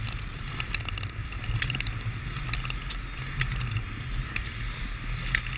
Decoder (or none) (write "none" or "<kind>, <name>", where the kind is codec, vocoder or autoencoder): none